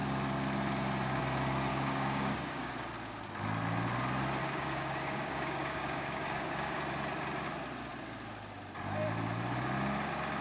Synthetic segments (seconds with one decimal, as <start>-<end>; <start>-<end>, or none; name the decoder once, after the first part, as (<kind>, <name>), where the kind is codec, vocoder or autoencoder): 1.7-2.7 (codec, DAC); 4.4-6.8